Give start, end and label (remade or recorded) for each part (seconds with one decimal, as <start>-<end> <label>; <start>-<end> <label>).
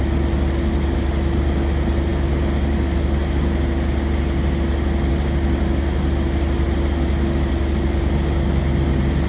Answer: 0.0-9.3 recorded